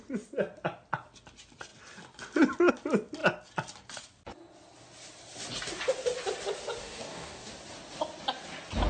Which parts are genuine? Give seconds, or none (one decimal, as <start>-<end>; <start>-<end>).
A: 0.0-6.8; 7.5-8.9